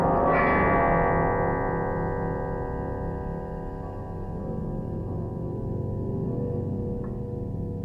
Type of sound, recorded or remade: recorded